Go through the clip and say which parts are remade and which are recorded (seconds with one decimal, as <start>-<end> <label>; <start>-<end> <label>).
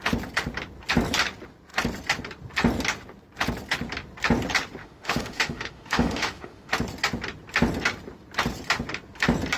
0.0-4.8 recorded; 4.8-6.7 remade; 6.7-9.6 recorded